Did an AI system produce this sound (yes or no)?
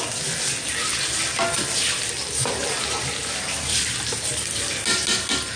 no